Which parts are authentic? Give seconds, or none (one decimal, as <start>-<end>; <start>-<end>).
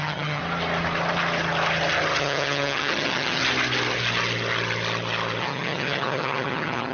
0.4-2.2; 3.4-5.4